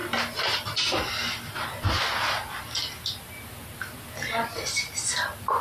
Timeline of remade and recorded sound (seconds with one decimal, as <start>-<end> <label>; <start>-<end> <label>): 0.0-5.6 recorded